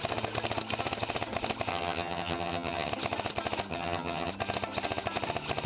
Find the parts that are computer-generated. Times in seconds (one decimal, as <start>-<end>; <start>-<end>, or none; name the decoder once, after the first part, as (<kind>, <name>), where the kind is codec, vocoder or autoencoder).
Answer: 1.7-2.9 (vocoder, HiFi-GAN); 3.7-4.3